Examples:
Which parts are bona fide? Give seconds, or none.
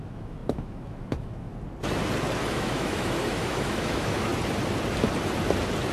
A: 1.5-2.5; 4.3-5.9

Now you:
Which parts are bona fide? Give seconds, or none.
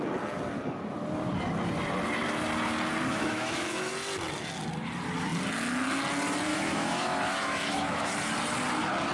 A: 0.0-3.1; 3.9-6.5; 8.1-9.1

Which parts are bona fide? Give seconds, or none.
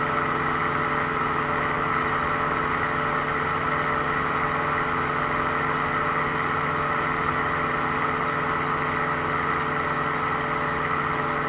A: 0.0-11.5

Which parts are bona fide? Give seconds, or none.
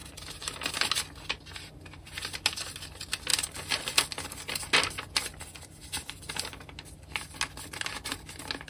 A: 0.0-8.7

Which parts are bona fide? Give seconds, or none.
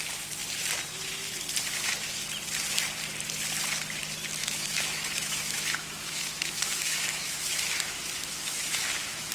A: 0.0-4.4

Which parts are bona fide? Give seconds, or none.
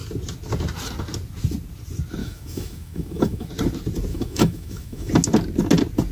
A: 0.0-2.2; 3.5-4.1; 5.1-6.1